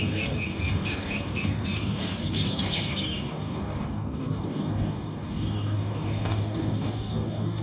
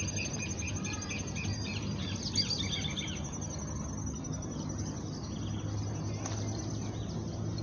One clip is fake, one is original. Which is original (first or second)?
second